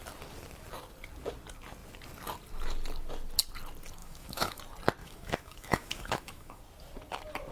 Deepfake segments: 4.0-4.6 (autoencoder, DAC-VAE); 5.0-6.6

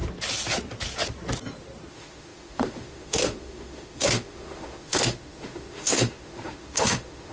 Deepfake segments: 1.9-7.3 (autoencoder, DAC-VAE)

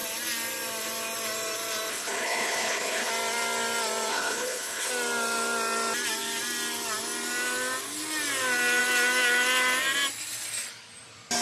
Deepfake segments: 1.9-3.1 (codec, HILCodec); 4.1-4.9

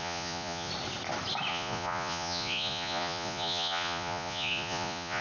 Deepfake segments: 0.0-0.7 (vocoder, Vocos); 1.5-5.2

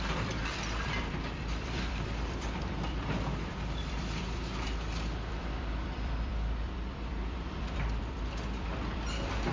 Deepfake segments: 0.0-9.5 (vocoder, BigVGAN v2)

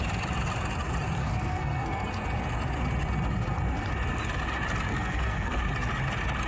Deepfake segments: 1.2-2.1 (codec, SNAC); 4.9-5.6